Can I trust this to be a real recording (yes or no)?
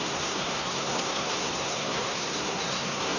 no